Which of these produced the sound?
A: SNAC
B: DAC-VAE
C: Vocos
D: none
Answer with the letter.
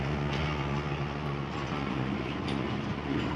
C